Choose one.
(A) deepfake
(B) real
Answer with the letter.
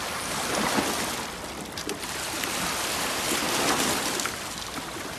B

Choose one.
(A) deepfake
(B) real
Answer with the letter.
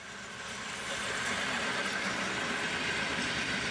B